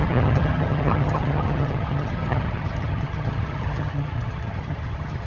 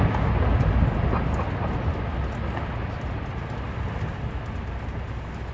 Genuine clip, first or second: second